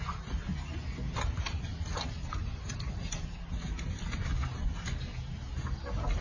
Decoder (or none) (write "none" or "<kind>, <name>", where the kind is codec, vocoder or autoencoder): none